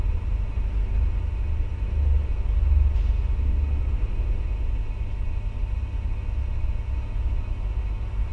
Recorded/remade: recorded